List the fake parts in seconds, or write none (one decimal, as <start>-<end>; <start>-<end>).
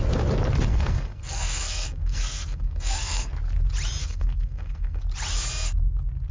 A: 0.7-3.3; 4.0-5.0